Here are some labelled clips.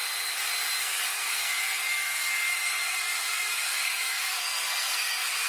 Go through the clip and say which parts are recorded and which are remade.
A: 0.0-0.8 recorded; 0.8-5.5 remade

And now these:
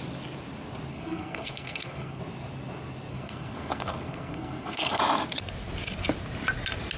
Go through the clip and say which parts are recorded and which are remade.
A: 0.0-0.9 recorded; 0.9-2.2 remade; 2.2-3.1 recorded; 3.1-5.0 remade; 5.0-7.0 recorded

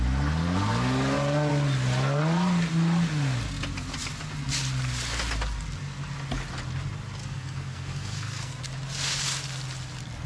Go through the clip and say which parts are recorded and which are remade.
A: 0.0-7.2 recorded; 7.2-8.6 remade; 8.6-10.3 recorded

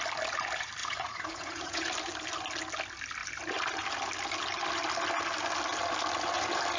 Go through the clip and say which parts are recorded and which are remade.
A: 0.0-0.8 recorded; 0.8-1.9 remade; 1.9-6.8 recorded

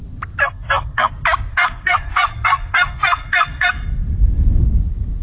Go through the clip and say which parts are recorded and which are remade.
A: 0.0-0.4 recorded; 0.4-1.1 remade; 1.1-1.5 recorded; 1.5-3.7 remade; 3.7-5.2 recorded

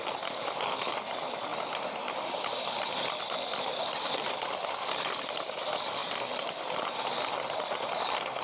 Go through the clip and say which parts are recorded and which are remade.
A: 0.0-1.5 remade; 1.5-3.5 recorded; 3.5-8.4 remade